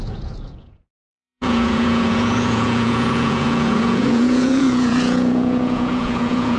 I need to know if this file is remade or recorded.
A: remade